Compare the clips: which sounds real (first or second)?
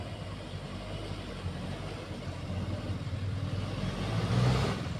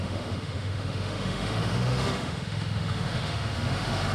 first